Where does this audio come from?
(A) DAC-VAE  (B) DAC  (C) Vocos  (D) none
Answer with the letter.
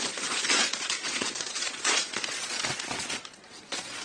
C